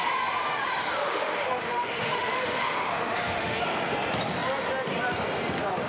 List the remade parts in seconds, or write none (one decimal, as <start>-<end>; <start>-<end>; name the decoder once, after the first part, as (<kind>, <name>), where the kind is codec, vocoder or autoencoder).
1.0-3.6 (autoencoder, DAC-VAE)